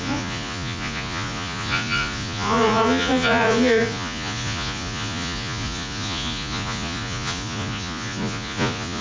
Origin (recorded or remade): remade